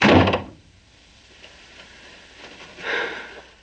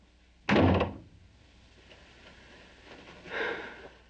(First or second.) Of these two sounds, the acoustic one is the second